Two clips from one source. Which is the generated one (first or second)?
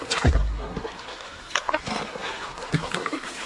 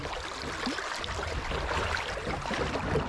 first